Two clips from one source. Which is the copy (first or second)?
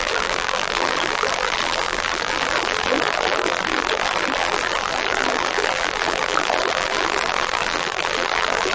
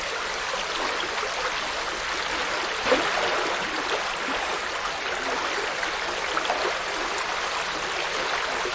first